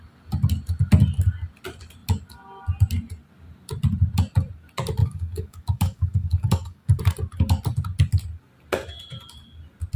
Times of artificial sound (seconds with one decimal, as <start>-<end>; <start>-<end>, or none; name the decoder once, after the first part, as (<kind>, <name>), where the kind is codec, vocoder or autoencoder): 5.0-7.0 (codec, DAC)